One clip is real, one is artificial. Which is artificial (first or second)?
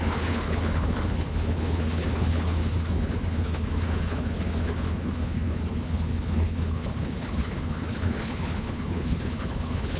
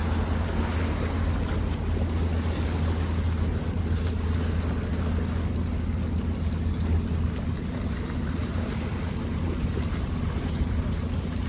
first